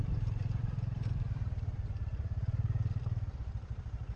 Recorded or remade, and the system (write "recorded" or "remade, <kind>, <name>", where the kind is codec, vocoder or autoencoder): remade, vocoder, BigVGAN v2